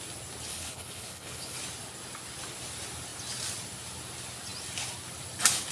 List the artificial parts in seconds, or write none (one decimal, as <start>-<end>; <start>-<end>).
0.5-1.6